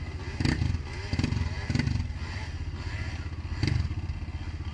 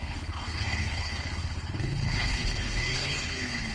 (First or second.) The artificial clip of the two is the second